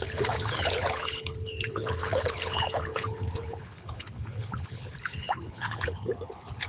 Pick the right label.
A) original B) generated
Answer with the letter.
B